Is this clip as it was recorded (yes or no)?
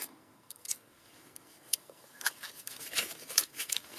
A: no